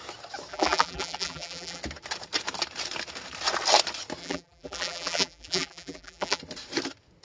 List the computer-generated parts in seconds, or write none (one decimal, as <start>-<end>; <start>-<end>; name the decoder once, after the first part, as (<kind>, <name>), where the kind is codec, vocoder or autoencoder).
0.5-1.8 (vocoder, BigVGAN v2); 4.2-6.4

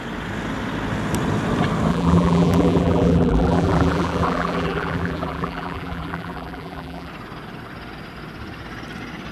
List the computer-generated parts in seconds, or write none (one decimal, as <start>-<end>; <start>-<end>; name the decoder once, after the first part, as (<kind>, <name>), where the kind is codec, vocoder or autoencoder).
1.9-7.1 (vocoder, BigVGAN v2)

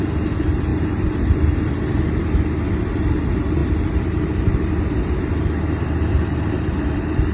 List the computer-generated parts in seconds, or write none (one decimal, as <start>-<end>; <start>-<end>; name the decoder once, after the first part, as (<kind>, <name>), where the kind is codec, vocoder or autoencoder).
3.6-4.5 (vocoder, BigVGAN v2)

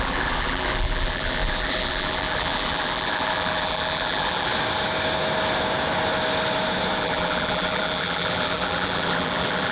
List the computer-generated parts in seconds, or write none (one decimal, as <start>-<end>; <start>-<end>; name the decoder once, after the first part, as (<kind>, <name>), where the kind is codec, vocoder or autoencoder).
0.0-4.5 (vocoder, BigVGAN v2); 7.0-9.7

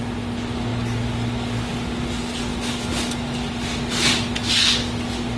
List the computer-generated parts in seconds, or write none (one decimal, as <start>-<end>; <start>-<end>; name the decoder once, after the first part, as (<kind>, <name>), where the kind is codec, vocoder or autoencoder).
none

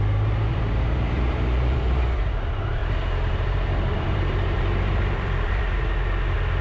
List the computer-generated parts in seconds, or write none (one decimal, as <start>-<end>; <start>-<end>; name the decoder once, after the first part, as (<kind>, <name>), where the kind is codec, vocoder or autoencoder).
0.5-2.3 (vocoder, BigVGAN v2); 2.8-5.6

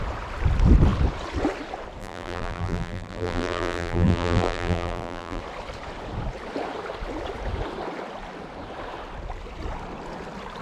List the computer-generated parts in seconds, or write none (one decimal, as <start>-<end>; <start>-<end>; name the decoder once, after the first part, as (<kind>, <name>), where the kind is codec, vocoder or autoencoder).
2.0-5.4 (vocoder, BigVGAN v2)